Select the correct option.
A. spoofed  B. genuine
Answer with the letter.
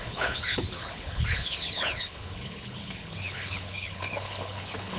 A